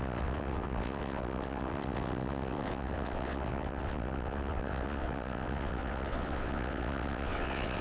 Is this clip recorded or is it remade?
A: remade